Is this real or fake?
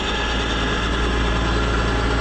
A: real